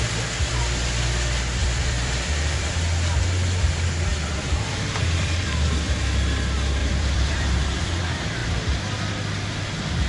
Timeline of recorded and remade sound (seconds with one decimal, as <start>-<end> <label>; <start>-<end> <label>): 0.0-1.6 recorded; 1.6-2.7 remade; 2.7-4.1 recorded; 4.1-5.4 remade; 5.4-6.8 recorded; 6.8-8.0 remade; 8.0-8.4 recorded; 8.4-9.0 remade; 9.0-10.1 recorded